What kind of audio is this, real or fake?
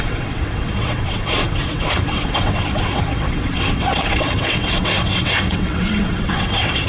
fake